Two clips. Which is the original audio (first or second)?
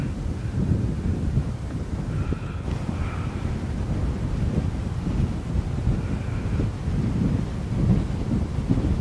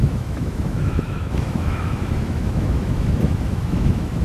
first